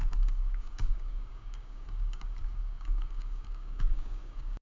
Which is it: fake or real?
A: fake